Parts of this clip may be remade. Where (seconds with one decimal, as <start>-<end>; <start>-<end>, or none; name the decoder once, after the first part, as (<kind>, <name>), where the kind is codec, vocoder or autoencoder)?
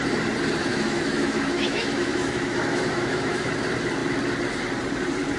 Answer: 0.7-3.5 (autoencoder, DAC-VAE)